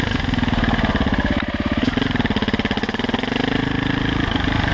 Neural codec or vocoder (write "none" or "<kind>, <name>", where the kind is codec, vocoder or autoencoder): none